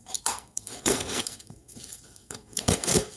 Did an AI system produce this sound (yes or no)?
yes